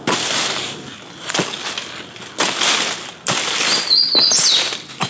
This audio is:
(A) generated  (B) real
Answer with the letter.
B